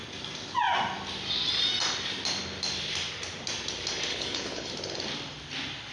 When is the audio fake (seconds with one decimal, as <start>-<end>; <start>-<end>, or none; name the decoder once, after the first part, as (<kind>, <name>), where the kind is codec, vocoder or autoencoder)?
4.1-4.7 (codec, HILCodec)